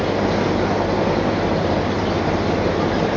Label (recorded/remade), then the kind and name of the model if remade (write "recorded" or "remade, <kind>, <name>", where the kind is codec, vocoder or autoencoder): recorded